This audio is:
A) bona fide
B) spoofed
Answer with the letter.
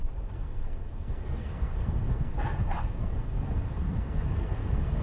B